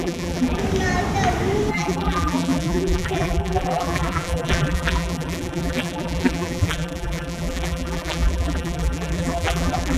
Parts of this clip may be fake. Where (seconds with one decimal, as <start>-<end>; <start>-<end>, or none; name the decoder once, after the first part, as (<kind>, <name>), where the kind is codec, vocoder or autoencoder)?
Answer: 0.0-0.6 (vocoder, BigVGAN v2); 1.7-10.0